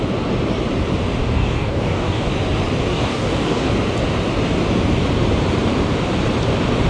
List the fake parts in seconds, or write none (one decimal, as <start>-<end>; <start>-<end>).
1.2-2.3; 2.9-3.7